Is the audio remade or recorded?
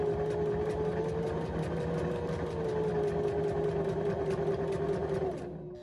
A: recorded